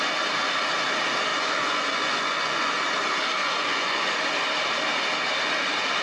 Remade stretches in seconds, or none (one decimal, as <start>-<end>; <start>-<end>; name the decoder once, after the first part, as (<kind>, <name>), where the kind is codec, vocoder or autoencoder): 1.3-2.7 (vocoder, Vocos); 3.4-4.1

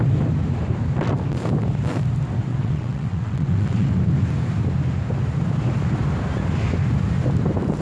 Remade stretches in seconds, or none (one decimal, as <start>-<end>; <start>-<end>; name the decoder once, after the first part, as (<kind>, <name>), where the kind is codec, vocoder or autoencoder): 2.5-3.9 (vocoder, WaveNeXt)

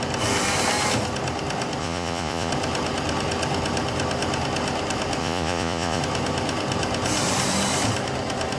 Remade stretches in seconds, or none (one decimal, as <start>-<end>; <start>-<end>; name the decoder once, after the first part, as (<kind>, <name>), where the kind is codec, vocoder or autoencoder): 1.8-2.5 (vocoder, Vocos); 5.2-6.0

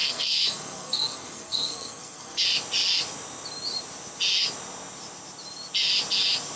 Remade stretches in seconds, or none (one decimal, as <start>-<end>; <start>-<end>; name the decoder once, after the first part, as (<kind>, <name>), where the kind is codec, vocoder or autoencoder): 0.0-2.4 (codec, SNAC)

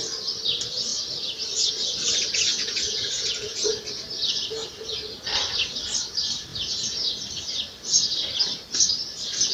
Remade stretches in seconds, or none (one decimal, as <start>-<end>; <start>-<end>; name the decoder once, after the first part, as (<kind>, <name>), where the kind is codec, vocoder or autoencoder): 2.5-3.7 (vocoder, Vocos); 6.5-7.1

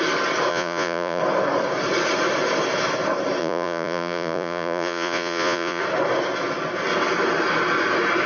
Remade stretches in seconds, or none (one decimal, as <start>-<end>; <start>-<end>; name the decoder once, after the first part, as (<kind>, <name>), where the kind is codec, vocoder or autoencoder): 0.5-1.2 (vocoder, Vocos); 3.4-5.8

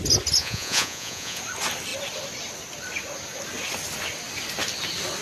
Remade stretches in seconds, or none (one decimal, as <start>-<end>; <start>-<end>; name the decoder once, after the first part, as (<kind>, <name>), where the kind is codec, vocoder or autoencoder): 0.4-1.4 (vocoder, Vocos)

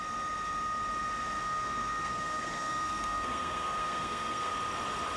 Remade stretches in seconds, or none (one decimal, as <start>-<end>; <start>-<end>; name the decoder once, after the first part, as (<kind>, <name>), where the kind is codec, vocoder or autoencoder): 1.4-4.5 (codec, SNAC)